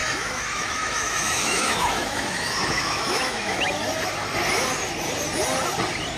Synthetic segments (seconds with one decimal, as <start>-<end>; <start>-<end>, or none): 0.0-3.7